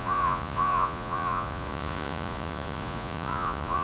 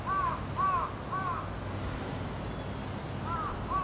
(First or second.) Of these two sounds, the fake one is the first